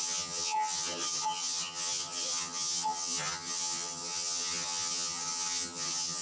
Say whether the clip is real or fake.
fake